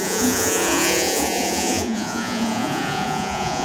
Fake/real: fake